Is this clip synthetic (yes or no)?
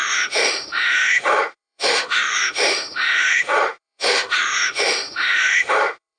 yes